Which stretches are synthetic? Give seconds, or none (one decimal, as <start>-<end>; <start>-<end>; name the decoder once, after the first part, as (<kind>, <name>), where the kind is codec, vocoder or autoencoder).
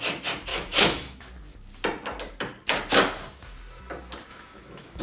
0.5-1.3 (autoencoder, DAC-VAE); 4.3-5.0